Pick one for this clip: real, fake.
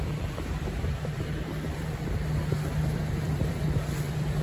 fake